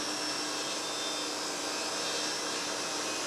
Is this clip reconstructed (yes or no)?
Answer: no